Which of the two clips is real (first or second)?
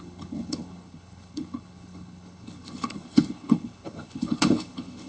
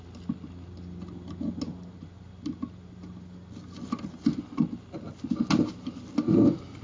second